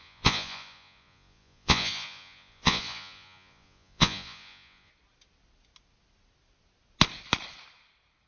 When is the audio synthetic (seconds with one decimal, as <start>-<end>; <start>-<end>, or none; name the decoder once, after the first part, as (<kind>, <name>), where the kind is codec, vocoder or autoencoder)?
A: 0.0-4.9 (vocoder, Vocos)